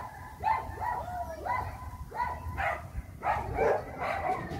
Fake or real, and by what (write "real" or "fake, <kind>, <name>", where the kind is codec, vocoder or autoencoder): real